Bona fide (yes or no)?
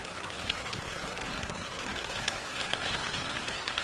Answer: no